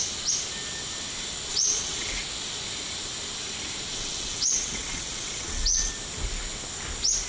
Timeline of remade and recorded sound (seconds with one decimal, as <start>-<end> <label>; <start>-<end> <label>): 0.0-1.5 recorded; 1.5-2.2 remade; 2.2-3.9 recorded; 3.9-5.9 remade; 5.9-7.3 recorded